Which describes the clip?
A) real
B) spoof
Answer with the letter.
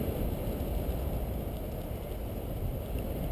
A